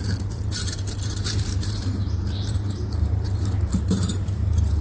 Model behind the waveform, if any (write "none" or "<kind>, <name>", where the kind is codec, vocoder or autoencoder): vocoder, BigVGAN v2